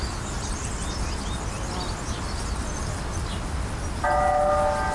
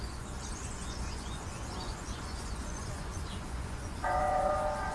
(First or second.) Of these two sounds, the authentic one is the first